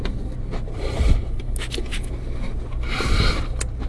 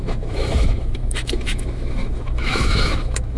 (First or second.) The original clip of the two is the first